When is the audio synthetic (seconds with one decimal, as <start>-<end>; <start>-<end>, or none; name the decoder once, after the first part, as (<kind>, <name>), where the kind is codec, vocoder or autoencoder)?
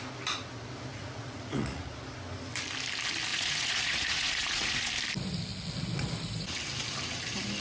0.9-1.8 (vocoder, Vocos); 3.3-4.9